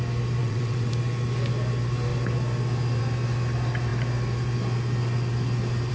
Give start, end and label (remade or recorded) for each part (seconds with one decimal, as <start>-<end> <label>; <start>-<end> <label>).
0.0-0.4 recorded; 0.4-0.9 remade; 0.9-5.9 recorded